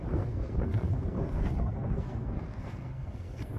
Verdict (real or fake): fake